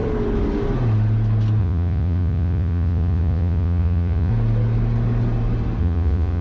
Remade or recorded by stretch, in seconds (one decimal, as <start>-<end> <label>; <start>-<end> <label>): 0.0-1.6 recorded; 1.6-4.3 remade; 4.3-5.8 recorded; 5.8-6.4 remade